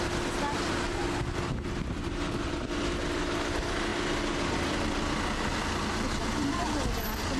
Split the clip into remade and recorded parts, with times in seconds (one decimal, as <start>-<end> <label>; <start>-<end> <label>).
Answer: 0.0-7.4 recorded